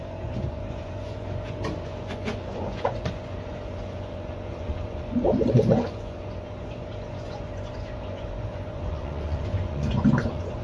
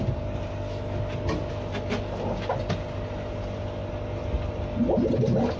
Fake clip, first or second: first